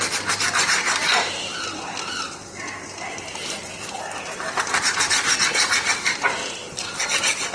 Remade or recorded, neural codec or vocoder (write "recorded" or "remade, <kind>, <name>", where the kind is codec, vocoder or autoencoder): recorded